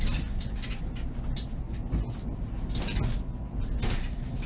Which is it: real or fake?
real